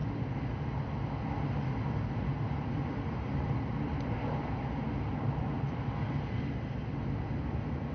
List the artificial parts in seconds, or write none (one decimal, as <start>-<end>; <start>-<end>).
none